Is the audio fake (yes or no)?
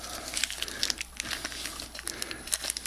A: no